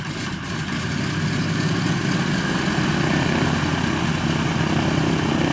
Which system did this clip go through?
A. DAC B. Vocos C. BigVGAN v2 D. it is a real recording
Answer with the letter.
D